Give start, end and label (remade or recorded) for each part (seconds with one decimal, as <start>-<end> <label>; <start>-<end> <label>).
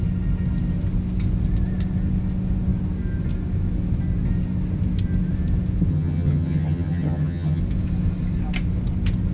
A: 0.0-5.9 recorded; 5.9-7.6 remade; 7.6-9.3 recorded